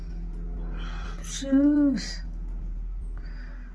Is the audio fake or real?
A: real